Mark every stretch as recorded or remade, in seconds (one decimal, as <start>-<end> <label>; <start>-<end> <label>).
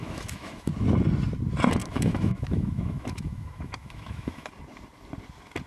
0.0-0.7 remade; 0.7-1.8 recorded; 1.8-4.5 remade; 4.5-5.7 recorded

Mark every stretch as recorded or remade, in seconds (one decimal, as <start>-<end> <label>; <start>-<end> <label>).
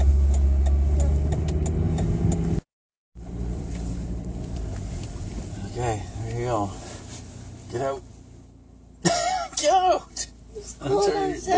0.0-3.0 recorded; 3.0-5.7 remade; 5.7-11.6 recorded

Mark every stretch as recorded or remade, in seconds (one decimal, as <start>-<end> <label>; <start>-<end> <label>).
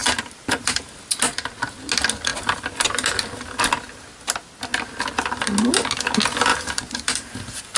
0.0-0.8 remade; 0.8-6.5 recorded; 6.5-7.8 remade